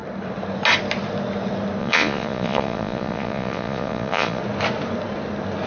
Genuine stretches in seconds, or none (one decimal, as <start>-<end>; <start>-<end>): 0.0-1.8; 4.4-5.7